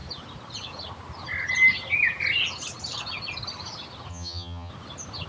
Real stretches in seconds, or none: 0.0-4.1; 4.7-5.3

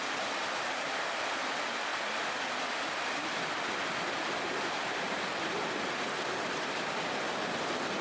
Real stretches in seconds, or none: 0.0-1.9; 5.9-8.0

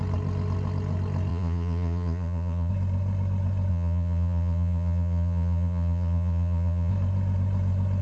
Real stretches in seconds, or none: 0.0-1.3; 2.7-3.7; 6.9-8.0

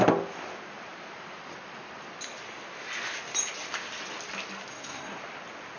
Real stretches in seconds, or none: 0.0-4.7; 5.2-5.8